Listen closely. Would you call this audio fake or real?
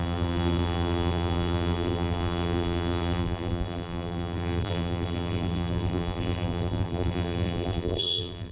fake